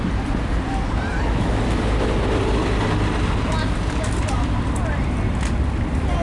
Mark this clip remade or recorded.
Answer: recorded